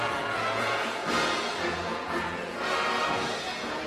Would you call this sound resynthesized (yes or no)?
yes